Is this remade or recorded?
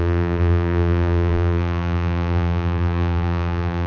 remade